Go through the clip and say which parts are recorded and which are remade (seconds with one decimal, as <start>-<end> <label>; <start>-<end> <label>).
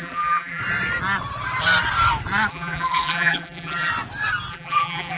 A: 0.0-0.6 remade; 0.6-2.5 recorded; 2.5-3.9 remade; 3.9-4.5 recorded; 4.5-5.2 remade